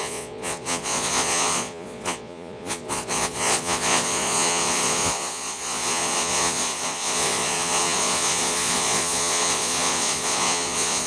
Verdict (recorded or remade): remade